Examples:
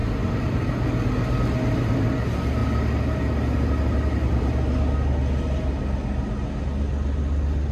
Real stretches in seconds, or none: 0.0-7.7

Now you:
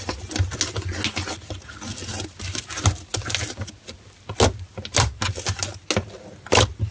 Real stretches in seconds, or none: 0.0-6.9

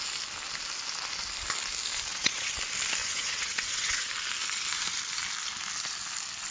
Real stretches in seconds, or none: 0.0-2.1; 2.6-3.0; 4.1-6.5